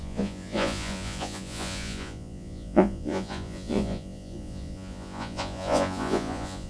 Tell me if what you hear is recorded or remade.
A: remade